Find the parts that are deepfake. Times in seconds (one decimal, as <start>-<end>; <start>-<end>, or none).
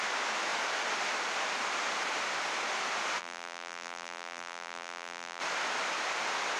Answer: 3.2-5.4